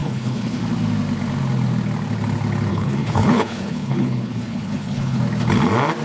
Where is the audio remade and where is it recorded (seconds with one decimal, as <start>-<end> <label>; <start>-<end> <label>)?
0.0-0.6 remade; 0.6-2.7 recorded; 2.7-5.2 remade; 5.2-6.0 recorded